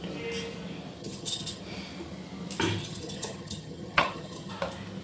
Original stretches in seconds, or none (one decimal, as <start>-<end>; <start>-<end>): 0.0-1.0; 1.6-2.8; 4.5-5.0